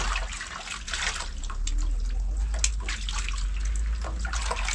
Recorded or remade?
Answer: recorded